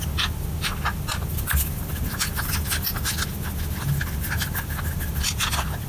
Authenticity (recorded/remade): recorded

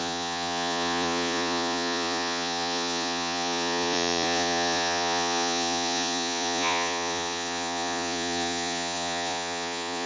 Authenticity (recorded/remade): remade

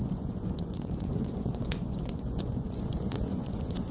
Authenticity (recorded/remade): remade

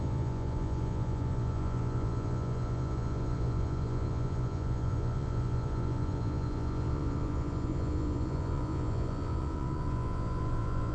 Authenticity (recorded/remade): remade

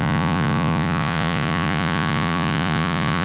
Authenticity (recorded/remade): remade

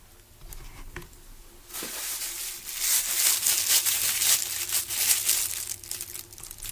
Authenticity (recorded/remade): recorded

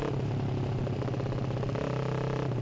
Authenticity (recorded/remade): recorded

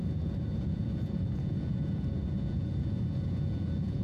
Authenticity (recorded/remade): remade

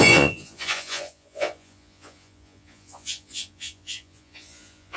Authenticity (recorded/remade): remade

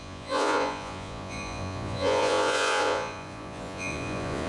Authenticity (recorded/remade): remade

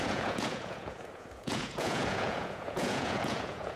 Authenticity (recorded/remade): remade